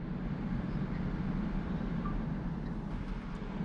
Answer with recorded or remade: recorded